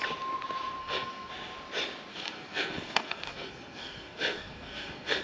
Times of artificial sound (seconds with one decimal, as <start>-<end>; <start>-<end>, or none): 0.8-1.3; 2.1-5.2

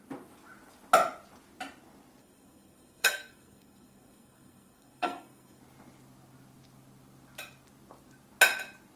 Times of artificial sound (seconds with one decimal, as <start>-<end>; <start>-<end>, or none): 2.2-5.6

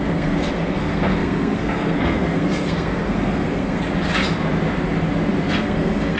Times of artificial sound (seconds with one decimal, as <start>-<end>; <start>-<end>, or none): 0.0-3.8; 5.6-6.2

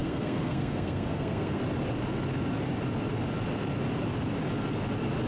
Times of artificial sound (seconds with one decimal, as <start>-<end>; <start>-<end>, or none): 0.0-1.6

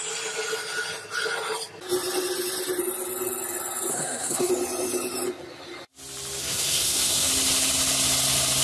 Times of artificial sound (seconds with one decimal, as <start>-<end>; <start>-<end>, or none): 3.9-4.5; 6.4-7.3

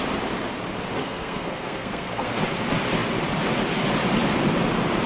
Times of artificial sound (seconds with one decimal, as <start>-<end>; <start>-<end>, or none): 1.0-2.4

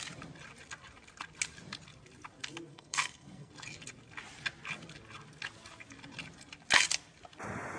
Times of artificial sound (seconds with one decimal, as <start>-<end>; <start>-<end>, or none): 2.7-3.5

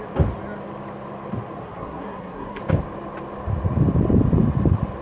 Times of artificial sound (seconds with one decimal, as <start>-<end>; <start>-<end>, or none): 1.6-2.6